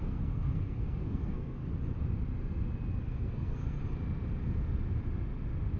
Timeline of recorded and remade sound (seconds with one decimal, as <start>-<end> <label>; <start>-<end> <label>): 0.0-1.6 remade; 1.6-3.0 recorded; 3.0-3.8 remade; 3.8-5.8 recorded